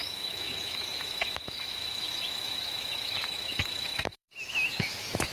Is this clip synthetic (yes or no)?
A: yes